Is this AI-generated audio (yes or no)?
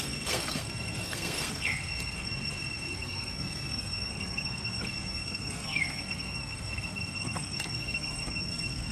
yes